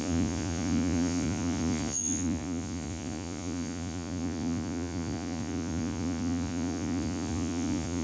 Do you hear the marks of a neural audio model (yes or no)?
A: yes